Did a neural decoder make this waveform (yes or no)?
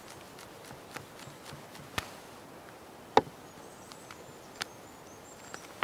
no